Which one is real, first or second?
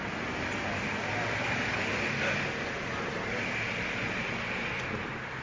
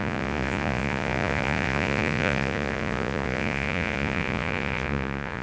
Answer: first